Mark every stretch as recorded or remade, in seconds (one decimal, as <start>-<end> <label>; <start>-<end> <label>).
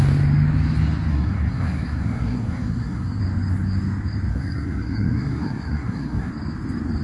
0.0-1.1 recorded; 1.1-3.2 remade; 3.2-4.3 recorded; 4.3-6.3 remade; 6.3-7.0 recorded